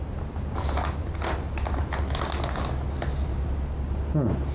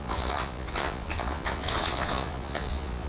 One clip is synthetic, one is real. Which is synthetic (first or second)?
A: second